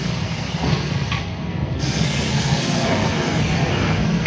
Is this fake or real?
fake